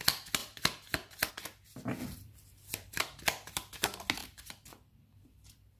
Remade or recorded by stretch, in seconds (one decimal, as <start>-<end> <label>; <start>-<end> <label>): 0.0-0.4 recorded; 0.4-1.3 remade; 1.3-2.0 recorded; 2.0-3.0 remade; 3.0-4.2 recorded; 4.2-5.8 remade